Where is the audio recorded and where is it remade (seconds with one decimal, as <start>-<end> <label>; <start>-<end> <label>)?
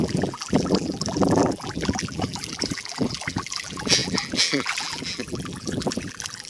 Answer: 0.0-6.5 remade